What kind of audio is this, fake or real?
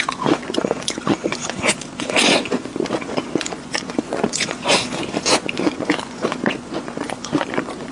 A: fake